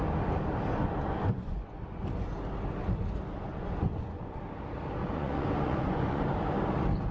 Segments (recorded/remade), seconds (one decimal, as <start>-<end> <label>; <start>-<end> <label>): 0.0-1.0 recorded; 1.0-1.8 remade; 1.8-3.5 recorded; 3.5-4.4 remade; 4.4-5.0 recorded; 5.0-6.2 remade; 6.2-7.1 recorded